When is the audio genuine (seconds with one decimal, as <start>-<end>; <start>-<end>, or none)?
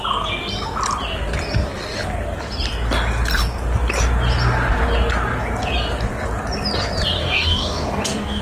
0.0-7.2